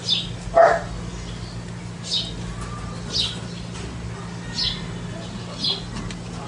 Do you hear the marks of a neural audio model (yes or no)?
no